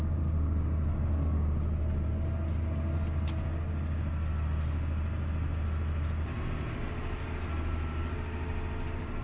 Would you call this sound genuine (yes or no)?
yes